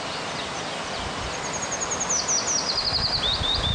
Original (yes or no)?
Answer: yes